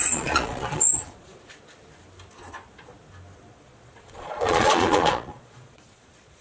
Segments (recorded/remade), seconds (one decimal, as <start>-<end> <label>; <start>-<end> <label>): 0.0-1.4 remade; 1.4-3.5 recorded; 3.5-6.4 remade